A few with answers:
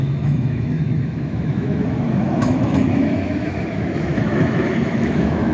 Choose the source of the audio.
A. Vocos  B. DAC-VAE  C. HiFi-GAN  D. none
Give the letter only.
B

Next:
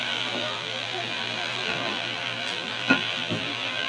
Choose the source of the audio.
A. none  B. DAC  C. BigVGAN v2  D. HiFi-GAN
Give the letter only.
C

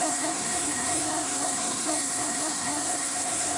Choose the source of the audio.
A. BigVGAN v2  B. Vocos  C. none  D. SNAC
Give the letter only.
D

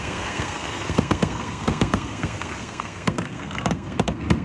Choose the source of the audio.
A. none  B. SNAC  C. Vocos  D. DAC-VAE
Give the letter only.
B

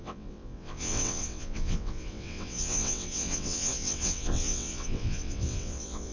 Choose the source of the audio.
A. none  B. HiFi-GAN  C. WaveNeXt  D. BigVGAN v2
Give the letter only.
C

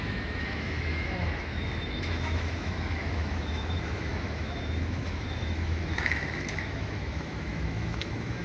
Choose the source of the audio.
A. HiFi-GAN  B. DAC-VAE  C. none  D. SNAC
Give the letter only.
B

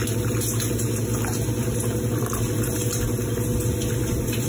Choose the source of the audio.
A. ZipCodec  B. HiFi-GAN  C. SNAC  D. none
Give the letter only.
D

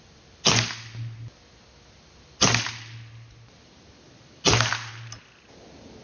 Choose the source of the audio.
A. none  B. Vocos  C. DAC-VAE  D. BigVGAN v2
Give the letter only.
A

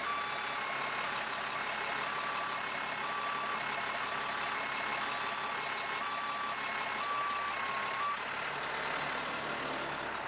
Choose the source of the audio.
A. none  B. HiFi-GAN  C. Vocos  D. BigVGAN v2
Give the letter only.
A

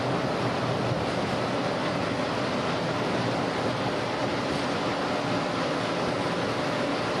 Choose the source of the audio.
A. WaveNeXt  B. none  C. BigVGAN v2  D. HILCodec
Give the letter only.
B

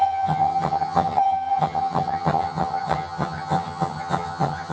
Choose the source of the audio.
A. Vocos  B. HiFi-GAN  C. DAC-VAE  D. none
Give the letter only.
B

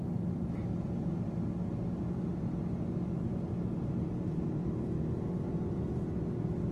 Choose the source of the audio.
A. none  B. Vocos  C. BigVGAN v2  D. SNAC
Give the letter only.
A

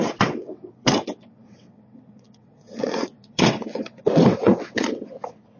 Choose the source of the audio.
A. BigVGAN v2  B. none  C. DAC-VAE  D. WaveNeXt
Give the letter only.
D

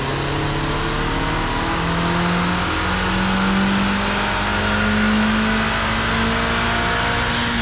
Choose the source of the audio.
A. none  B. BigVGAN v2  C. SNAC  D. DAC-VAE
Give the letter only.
A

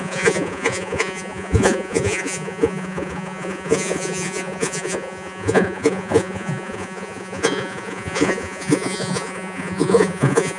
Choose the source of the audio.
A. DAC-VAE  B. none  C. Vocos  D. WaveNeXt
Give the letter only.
C